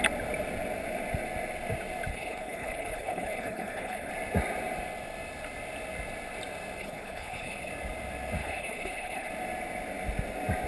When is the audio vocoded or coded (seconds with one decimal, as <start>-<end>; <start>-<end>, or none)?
2.1-4.1; 6.8-7.7; 8.4-9.3